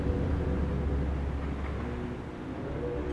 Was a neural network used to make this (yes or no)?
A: no